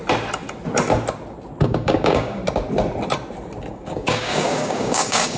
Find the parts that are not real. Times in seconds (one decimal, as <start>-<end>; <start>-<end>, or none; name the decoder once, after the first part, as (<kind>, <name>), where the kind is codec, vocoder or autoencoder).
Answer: 1.6-2.4 (codec, DAC); 3.7-5.4